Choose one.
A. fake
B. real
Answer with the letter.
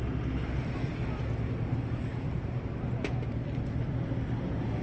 B